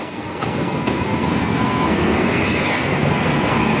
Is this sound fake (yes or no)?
yes